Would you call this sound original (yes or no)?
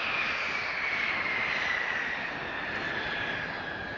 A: yes